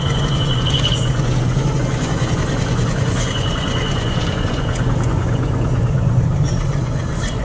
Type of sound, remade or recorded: remade